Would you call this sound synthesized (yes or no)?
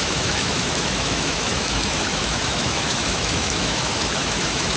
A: yes